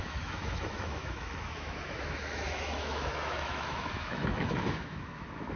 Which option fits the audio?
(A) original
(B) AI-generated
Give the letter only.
B